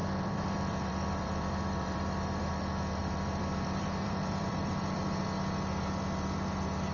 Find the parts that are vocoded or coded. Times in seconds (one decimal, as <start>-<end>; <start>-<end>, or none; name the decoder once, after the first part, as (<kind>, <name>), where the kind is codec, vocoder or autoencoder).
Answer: 0.0-2.5 (vocoder, BigVGAN v2); 3.0-5.2